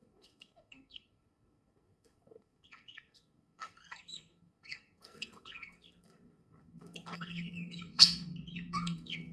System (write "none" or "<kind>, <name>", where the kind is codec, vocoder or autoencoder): codec, SNAC